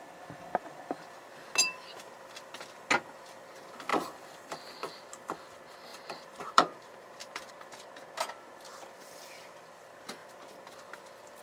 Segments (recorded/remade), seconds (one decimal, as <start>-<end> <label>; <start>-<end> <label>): 0.0-3.9 recorded; 3.9-4.7 remade; 4.7-5.9 recorded; 5.9-7.5 remade; 7.5-11.4 recorded